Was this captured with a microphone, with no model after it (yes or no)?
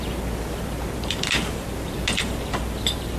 yes